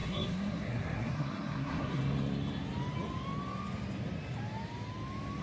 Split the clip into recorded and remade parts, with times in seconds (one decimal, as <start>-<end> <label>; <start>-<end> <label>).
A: 0.0-2.0 remade; 2.0-5.4 recorded